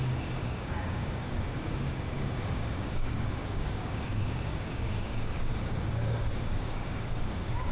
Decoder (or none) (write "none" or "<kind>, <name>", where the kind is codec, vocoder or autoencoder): codec, DAC